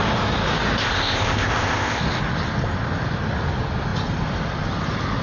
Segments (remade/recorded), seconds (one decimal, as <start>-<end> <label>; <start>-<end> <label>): 0.0-0.8 recorded; 0.8-2.0 remade; 2.0-5.2 recorded